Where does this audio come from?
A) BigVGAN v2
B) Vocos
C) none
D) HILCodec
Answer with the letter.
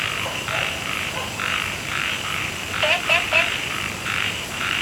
A